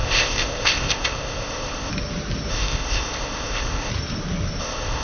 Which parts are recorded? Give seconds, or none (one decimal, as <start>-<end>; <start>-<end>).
1.9-2.5; 3.9-4.6